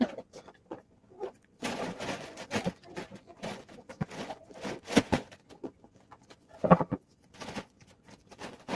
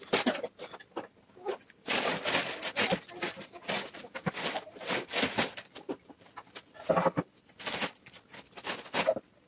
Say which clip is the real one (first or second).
second